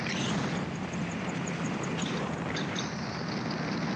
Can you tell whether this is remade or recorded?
recorded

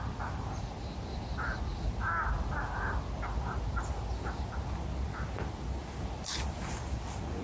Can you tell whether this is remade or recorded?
recorded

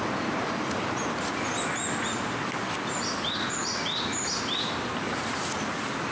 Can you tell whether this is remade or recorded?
recorded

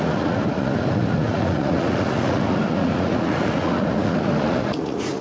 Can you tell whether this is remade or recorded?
remade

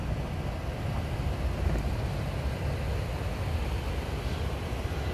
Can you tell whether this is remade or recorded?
recorded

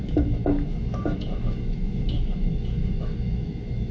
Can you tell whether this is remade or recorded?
remade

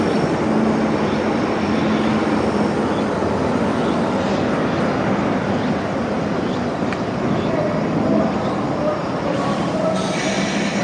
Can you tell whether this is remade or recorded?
recorded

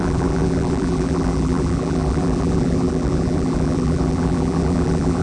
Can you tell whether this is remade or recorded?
remade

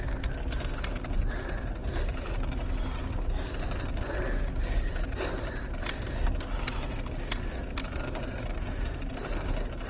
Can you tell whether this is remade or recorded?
recorded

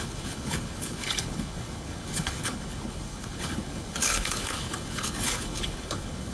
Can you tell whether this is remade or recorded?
remade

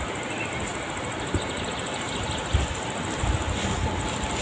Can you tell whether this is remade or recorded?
recorded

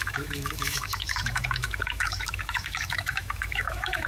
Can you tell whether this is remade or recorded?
remade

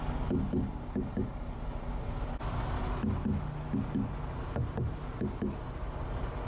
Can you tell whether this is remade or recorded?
recorded